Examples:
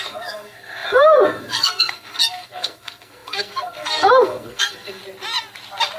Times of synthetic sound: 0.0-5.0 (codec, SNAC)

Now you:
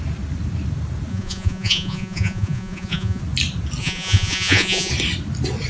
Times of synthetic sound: 1.1-3.2 (vocoder, Vocos); 3.8-4.9